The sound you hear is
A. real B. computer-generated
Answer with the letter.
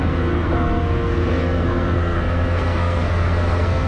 B